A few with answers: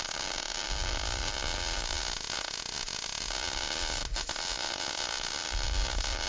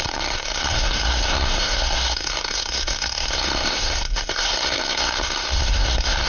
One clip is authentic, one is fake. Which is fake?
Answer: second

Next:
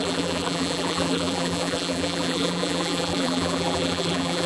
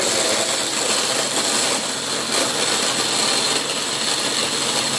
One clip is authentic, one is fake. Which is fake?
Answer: first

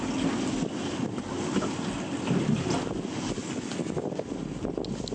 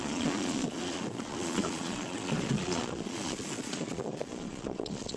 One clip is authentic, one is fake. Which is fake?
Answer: second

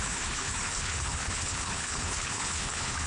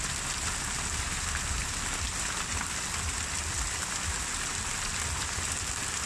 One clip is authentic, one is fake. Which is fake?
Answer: first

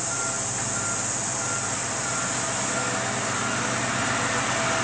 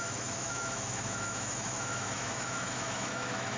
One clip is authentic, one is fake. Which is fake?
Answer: second